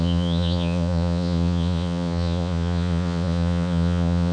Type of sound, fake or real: fake